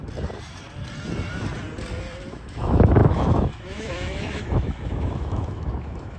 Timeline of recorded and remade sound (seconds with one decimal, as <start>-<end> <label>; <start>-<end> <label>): 0.0-2.3 recorded; 2.3-6.2 remade